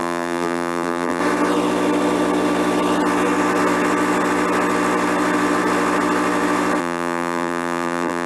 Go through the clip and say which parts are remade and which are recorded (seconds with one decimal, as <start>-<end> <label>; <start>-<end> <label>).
0.0-1.2 remade; 1.2-6.8 recorded; 6.8-8.3 remade